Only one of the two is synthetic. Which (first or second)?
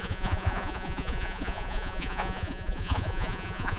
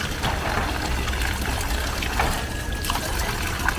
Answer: first